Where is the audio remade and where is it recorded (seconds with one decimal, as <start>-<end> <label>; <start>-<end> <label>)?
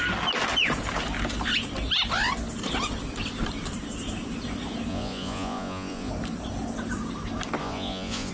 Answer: 0.0-4.9 recorded; 4.9-6.1 remade; 6.1-7.6 recorded; 7.6-8.3 remade